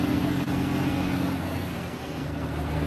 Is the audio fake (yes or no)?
yes